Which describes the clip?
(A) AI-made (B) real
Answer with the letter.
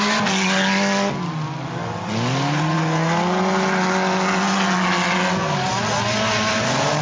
B